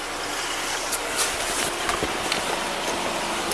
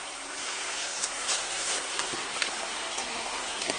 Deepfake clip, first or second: second